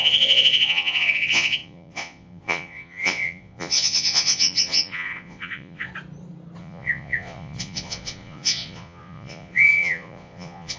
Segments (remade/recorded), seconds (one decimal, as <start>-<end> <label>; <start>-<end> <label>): 0.0-5.9 remade; 5.9-6.6 recorded; 6.6-10.8 remade